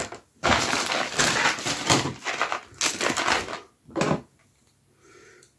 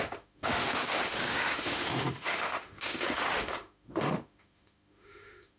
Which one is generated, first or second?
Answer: second